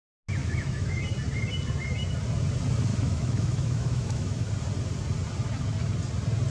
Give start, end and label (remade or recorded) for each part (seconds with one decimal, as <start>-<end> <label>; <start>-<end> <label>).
0.0-0.4 recorded; 0.4-1.0 remade; 1.0-2.9 recorded; 2.9-4.5 remade; 4.5-6.5 recorded